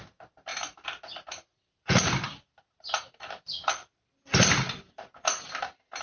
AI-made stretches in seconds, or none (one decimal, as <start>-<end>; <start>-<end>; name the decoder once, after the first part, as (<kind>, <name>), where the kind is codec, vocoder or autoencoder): none